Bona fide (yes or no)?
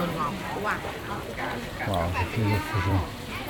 no